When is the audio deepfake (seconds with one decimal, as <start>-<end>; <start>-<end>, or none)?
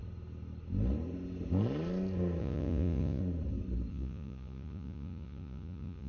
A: 2.4-3.2; 3.9-6.1